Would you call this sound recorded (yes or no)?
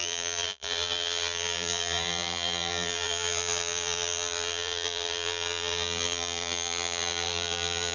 no